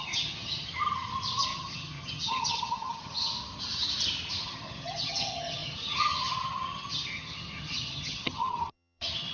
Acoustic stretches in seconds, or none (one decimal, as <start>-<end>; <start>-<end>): 0.7-1.4; 3.3-4.4